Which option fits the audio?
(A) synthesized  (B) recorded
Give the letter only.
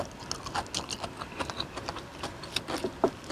B